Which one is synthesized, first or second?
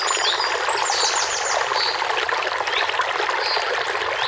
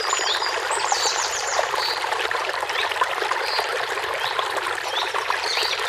second